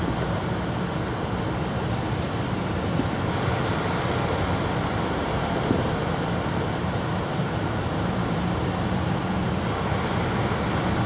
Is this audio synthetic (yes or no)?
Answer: no